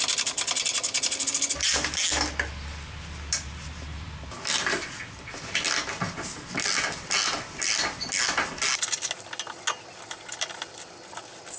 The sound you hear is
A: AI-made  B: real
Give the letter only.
B